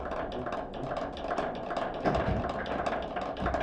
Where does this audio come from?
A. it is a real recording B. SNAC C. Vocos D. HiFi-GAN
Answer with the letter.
A